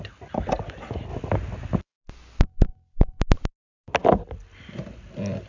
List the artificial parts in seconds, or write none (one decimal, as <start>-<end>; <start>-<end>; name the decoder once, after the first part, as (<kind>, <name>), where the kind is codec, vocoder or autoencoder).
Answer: none